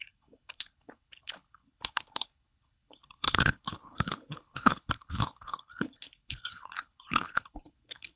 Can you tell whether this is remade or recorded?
remade